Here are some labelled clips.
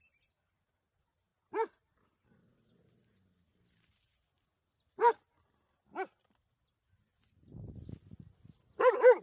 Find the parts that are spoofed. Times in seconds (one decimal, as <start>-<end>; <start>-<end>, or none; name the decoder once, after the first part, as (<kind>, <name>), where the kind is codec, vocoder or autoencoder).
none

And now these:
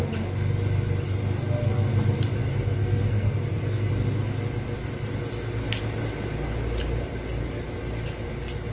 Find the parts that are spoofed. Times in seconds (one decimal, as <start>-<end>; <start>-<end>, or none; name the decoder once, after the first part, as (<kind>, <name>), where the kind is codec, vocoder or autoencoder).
2.4-3.9 (codec, SNAC)

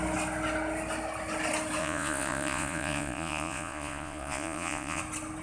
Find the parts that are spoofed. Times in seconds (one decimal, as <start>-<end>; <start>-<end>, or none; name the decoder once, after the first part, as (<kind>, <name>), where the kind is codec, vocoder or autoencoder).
1.8-5.0 (vocoder, Vocos)

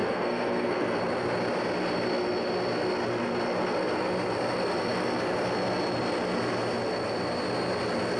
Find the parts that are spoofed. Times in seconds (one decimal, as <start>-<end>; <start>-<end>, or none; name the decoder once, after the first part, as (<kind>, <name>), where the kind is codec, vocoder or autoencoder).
0.0-1.0 (codec, SNAC)